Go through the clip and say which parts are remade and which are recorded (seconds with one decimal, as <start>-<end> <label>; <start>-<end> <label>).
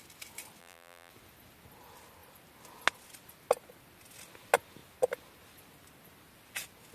0.0-0.6 recorded; 0.6-1.1 remade; 1.1-6.9 recorded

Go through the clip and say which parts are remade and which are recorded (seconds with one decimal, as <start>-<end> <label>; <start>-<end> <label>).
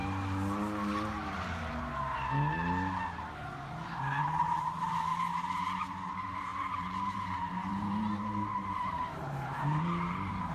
0.0-4.2 recorded; 4.2-10.5 remade